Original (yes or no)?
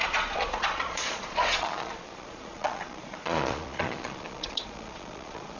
no